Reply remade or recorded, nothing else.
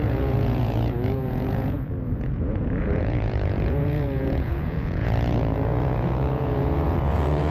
remade